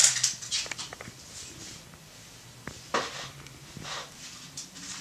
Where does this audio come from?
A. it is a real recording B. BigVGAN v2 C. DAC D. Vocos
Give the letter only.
B